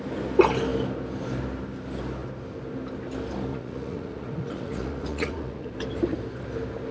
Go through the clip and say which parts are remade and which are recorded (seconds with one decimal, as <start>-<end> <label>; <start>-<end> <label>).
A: 0.0-3.5 recorded; 3.5-5.7 remade; 5.7-6.9 recorded